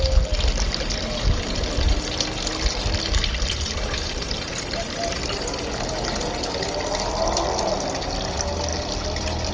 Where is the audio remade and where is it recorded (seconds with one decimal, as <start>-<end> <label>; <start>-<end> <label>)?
0.0-9.5 recorded